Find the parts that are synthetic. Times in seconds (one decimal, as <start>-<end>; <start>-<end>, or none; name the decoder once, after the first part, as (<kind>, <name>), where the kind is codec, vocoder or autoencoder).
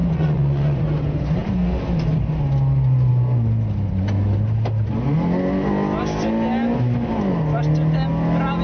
0.0-0.8 (vocoder, Vocos)